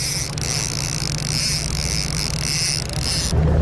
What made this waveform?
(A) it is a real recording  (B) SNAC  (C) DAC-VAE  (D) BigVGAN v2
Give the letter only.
A